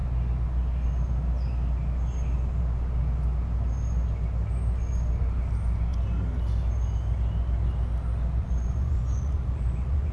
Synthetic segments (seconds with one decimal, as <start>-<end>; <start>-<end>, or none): 8.4-10.1